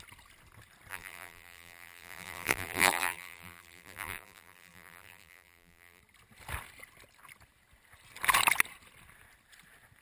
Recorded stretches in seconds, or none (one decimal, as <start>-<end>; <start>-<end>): 0.0-0.9; 6.0-10.0